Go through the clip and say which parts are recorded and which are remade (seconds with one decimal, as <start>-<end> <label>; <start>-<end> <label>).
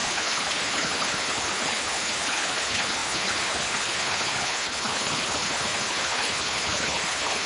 0.0-7.5 remade